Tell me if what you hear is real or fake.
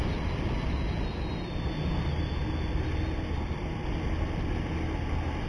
real